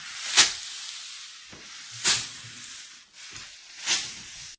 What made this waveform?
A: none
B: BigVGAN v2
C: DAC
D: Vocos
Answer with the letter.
A